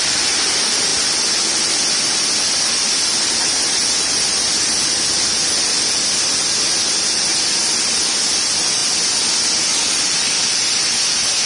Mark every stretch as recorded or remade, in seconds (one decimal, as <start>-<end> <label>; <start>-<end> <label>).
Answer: 0.0-0.9 remade; 0.9-2.6 recorded; 2.6-8.8 remade; 8.8-9.9 recorded; 9.9-11.5 remade